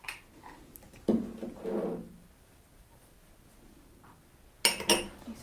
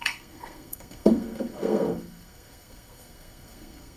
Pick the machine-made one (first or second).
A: second